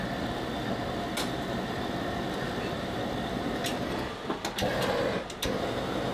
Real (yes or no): yes